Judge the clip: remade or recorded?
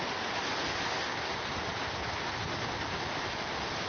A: recorded